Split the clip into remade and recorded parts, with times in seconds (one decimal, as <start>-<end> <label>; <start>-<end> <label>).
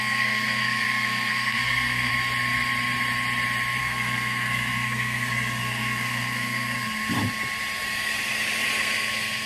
0.0-2.1 remade; 2.1-3.8 recorded; 3.8-7.0 remade; 7.0-8.8 recorded; 8.8-9.5 remade